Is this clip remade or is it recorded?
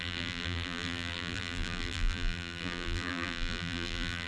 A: remade